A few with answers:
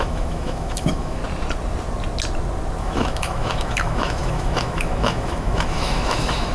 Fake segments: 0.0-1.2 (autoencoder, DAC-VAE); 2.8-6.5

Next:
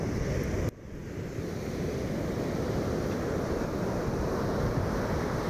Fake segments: none

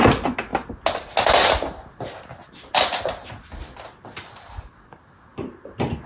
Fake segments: none

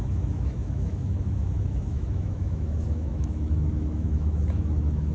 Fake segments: 0.0-5.1 (autoencoder, DAC-VAE)

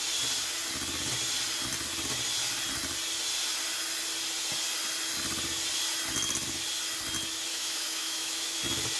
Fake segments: 7.5-8.6 (autoencoder, DAC-VAE)